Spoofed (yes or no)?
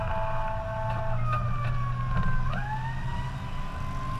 no